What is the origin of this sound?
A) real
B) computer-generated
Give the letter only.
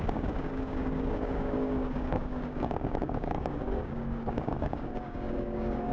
B